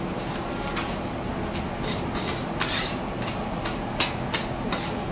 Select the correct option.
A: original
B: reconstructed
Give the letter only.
A